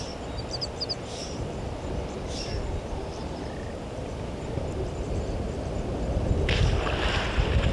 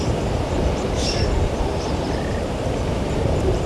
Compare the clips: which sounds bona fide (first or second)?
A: first